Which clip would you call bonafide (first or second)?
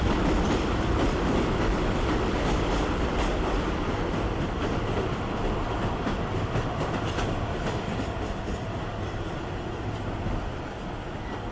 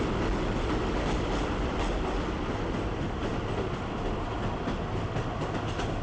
second